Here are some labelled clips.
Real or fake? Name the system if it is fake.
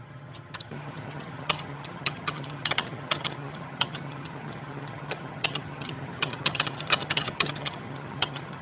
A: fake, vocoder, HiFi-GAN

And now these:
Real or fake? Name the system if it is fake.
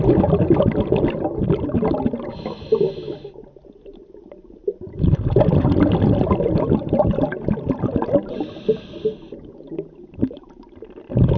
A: real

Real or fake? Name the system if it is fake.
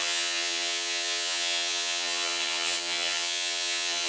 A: fake, vocoder, HiFi-GAN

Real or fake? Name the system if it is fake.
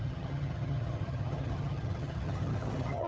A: fake, vocoder, HiFi-GAN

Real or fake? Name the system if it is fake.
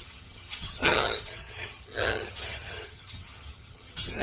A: fake, vocoder, HiFi-GAN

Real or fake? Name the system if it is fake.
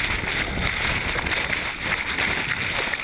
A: real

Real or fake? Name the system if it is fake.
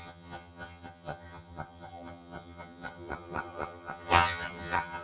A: fake, vocoder, HiFi-GAN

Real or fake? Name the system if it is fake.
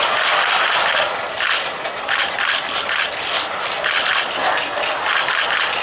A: real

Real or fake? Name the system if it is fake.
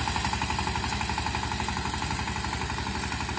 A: real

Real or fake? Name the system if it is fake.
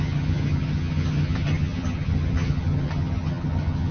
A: fake, vocoder, HiFi-GAN